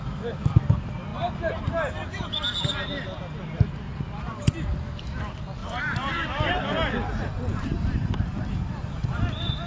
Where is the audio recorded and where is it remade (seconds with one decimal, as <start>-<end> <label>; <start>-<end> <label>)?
0.0-5.6 recorded; 5.6-6.6 remade; 6.6-7.5 recorded; 7.5-8.2 remade; 8.2-9.7 recorded